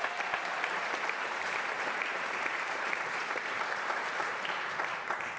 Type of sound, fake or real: fake